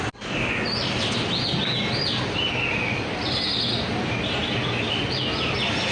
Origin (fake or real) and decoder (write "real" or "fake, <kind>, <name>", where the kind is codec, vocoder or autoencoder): real